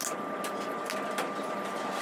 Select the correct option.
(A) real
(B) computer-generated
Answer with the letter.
A